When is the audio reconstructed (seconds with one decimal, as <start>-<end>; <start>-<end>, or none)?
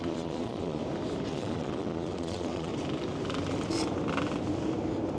0.0-0.8; 1.3-2.7